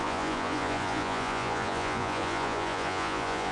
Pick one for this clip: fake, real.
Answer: fake